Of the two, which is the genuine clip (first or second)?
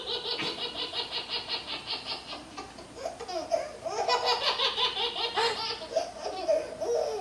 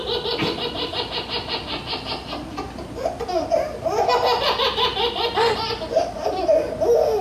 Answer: first